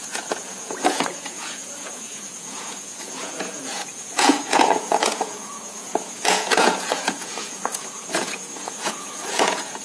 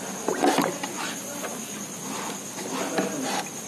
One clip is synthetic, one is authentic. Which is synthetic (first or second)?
first